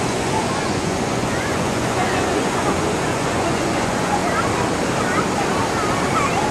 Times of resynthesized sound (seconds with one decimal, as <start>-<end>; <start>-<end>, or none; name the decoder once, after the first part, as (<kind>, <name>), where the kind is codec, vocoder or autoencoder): 0.0-4.2 (vocoder, Vocos)